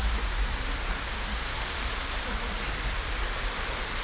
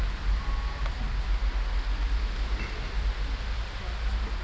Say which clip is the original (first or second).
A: second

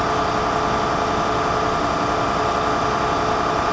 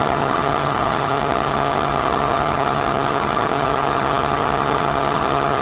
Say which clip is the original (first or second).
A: first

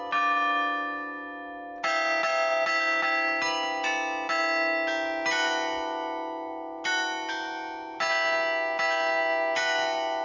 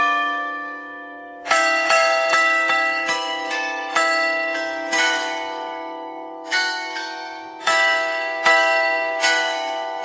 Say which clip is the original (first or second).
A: first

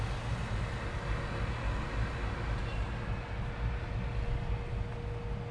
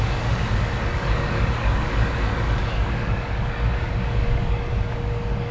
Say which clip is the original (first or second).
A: first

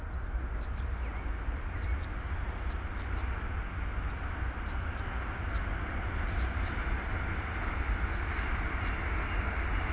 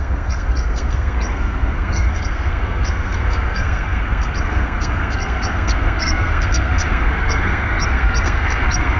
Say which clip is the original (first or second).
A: first